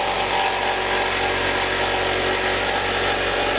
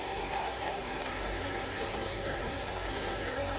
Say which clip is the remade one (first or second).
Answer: second